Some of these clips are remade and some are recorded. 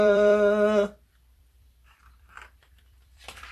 remade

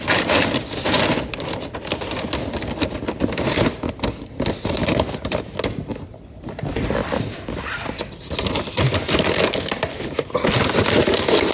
recorded